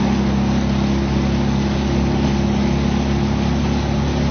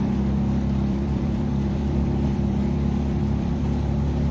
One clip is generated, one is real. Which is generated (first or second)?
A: second